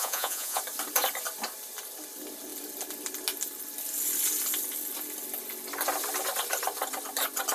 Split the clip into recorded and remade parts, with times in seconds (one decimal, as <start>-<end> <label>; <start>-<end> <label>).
0.0-0.6 remade; 0.6-7.5 recorded